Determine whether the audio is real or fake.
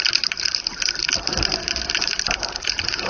fake